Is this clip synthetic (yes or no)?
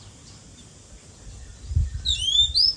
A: no